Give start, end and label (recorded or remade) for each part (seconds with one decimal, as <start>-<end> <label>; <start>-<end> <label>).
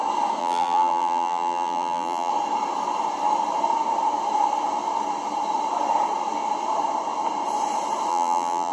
0.0-0.4 recorded; 0.4-2.3 remade; 2.3-8.1 recorded; 8.1-8.7 remade